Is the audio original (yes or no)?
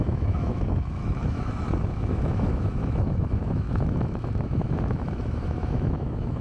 no